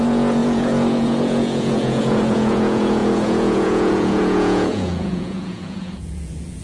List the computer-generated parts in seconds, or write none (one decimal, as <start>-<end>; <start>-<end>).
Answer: 0.0-6.6